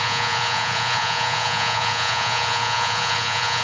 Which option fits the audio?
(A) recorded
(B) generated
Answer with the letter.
B